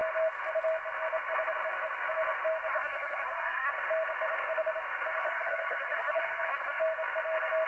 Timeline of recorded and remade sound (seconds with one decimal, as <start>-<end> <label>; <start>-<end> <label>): 0.0-2.7 recorded; 2.7-3.7 remade; 3.7-5.2 recorded; 5.2-6.8 remade; 6.8-7.7 recorded